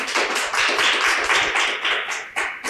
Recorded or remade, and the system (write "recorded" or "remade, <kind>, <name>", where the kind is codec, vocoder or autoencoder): recorded